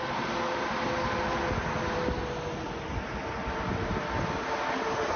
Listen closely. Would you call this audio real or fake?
real